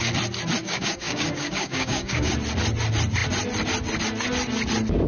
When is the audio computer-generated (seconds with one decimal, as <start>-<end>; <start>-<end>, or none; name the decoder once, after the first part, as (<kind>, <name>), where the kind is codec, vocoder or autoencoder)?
0.6-2.3 (codec, DAC)